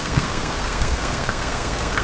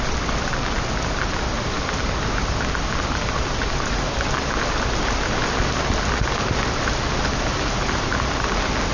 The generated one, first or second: first